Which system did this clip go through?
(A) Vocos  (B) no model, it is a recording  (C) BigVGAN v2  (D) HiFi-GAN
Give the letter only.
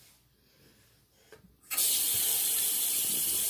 B